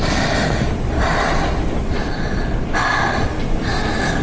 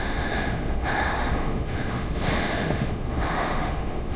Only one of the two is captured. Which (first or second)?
first